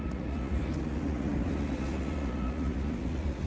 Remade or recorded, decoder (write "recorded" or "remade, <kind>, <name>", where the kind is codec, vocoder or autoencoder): remade, vocoder, Vocos